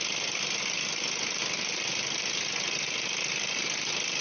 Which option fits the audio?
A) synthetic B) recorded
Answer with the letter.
B